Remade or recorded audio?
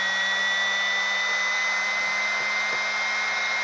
recorded